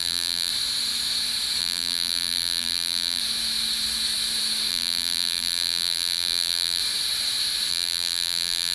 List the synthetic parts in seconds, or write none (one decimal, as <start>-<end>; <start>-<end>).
0.0-0.5; 1.6-3.2; 4.7-6.8; 7.7-8.7